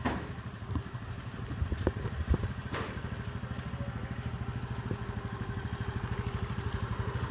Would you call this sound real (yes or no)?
yes